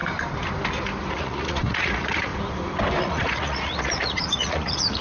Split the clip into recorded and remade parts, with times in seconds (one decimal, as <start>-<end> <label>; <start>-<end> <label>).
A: 0.0-1.1 recorded; 1.1-2.3 remade; 2.3-3.0 recorded; 3.0-5.0 remade